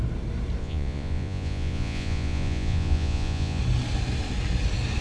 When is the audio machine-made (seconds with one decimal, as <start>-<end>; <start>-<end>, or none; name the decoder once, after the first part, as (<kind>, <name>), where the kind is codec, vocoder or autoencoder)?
0.6-3.6 (vocoder, Vocos)